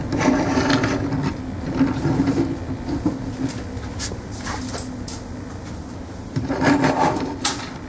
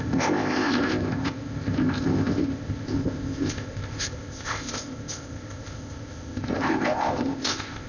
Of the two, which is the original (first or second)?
first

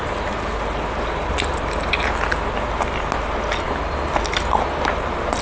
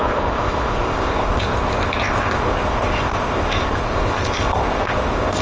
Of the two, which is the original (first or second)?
first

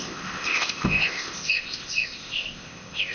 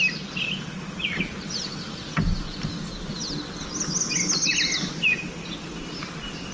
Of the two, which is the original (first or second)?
second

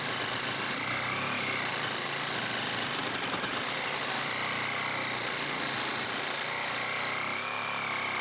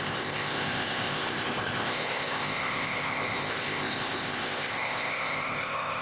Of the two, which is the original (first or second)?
first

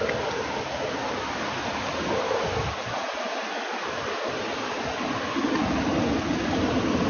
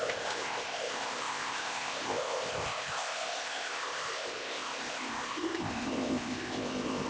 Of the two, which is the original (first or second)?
first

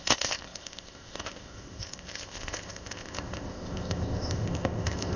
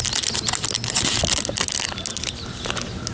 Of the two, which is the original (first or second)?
second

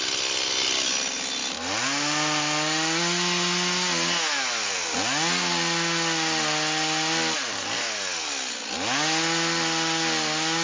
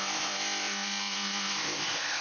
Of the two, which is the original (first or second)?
first